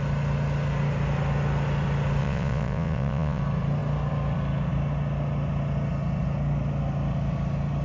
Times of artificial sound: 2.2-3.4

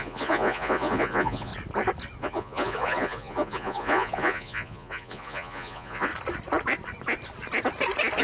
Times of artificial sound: 0.0-1.5; 2.2-6.1

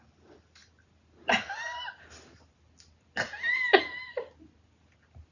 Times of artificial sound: none

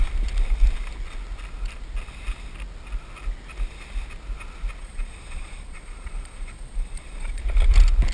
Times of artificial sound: 4.8-7.4